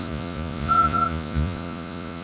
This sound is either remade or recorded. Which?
remade